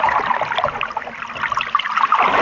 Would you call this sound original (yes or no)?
yes